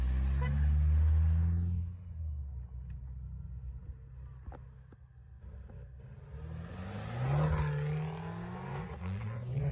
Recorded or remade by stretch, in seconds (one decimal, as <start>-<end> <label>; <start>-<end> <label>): 0.0-8.7 recorded; 8.7-9.7 remade